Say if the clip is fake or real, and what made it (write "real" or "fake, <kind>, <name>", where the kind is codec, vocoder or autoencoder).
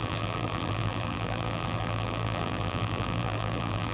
fake, vocoder, BigVGAN v2